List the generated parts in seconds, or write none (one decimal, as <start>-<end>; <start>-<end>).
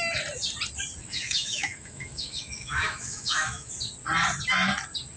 1.0-3.7